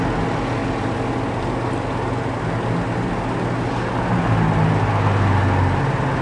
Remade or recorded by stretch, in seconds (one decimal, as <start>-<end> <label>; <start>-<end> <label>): 0.0-6.2 recorded